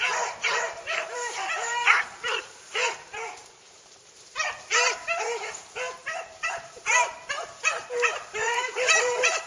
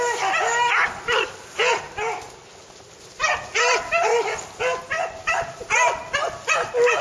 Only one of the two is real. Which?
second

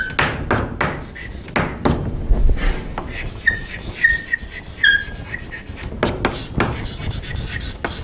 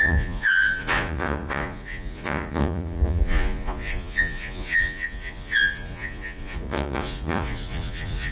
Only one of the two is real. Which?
first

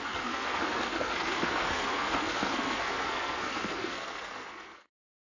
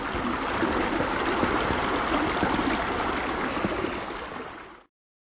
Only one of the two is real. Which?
second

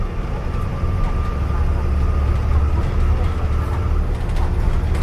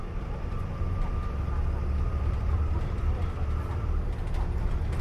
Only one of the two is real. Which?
first